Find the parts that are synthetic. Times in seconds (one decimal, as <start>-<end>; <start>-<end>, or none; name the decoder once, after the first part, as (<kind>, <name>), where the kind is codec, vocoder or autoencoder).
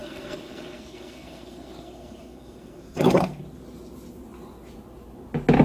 0.0-3.4 (codec, SNAC)